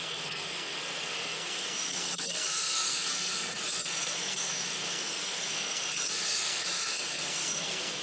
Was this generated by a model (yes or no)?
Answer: yes